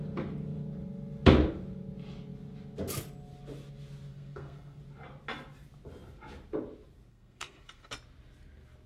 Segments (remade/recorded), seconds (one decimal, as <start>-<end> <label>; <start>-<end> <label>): 0.0-4.1 recorded; 4.1-4.8 remade; 4.8-7.1 recorded; 7.1-7.9 remade; 7.9-8.9 recorded